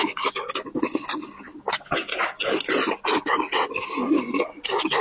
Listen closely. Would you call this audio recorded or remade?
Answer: recorded